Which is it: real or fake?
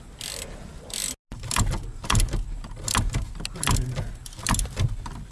real